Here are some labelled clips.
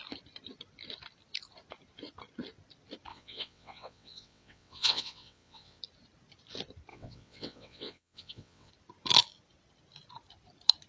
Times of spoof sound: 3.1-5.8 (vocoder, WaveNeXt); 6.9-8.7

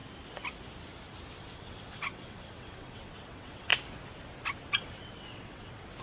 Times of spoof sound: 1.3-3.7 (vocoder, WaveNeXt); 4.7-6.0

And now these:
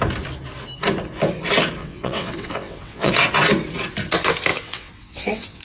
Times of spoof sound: 1.8-3.1 (vocoder, WaveNeXt); 4.5-5.6